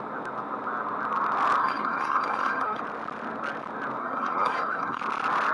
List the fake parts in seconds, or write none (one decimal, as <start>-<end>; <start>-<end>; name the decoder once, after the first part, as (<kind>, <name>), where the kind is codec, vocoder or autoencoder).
1.6-2.8 (codec, SNAC); 4.0-5.0